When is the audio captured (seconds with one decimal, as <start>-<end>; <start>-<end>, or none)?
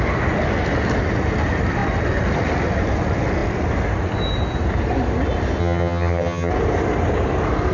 0.0-5.6; 6.5-7.7